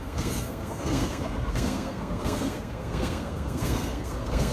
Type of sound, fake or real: fake